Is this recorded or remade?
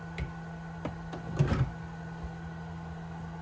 recorded